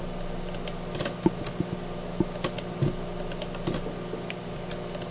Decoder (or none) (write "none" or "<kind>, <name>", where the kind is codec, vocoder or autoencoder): none